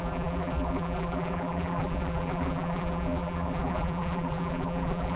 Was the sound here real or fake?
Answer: fake